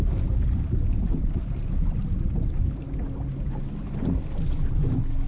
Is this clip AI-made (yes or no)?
no